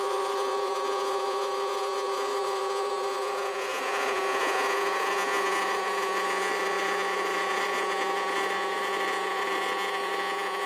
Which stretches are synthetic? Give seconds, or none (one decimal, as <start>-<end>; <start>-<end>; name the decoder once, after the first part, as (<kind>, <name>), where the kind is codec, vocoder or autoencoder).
0.0-10.7 (vocoder, Vocos)